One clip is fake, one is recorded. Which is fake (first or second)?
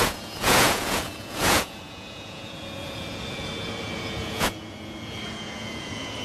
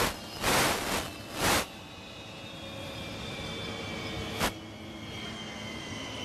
first